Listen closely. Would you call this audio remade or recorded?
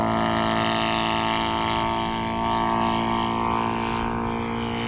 recorded